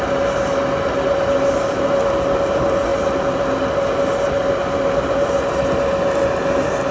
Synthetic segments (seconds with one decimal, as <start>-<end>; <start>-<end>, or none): none